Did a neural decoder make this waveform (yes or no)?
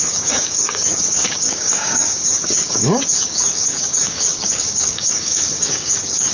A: yes